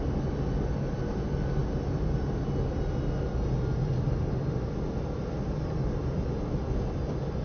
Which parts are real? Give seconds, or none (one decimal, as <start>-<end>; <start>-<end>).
0.0-7.4